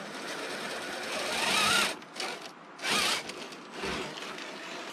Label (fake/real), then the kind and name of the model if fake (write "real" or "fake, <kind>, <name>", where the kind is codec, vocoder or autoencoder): real